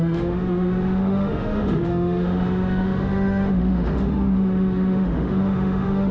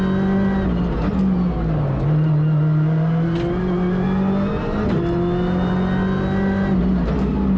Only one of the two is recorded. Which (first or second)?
second